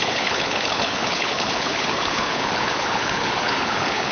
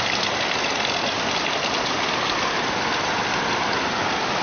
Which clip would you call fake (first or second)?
first